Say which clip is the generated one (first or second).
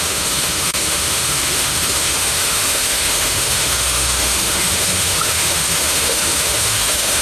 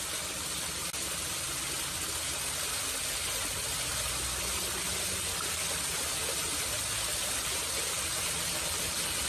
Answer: first